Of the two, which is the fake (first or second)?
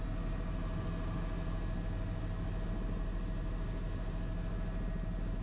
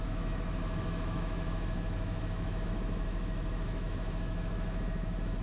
second